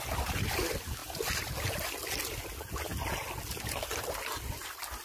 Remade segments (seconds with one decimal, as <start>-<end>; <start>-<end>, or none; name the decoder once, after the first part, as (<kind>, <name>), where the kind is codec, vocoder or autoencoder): none